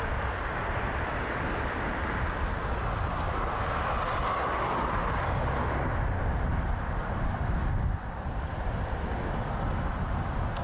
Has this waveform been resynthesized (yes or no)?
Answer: no